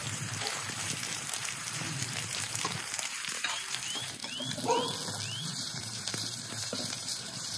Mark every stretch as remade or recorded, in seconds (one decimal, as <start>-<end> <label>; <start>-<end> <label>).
0.0-4.2 remade; 4.2-5.4 recorded; 5.4-7.6 remade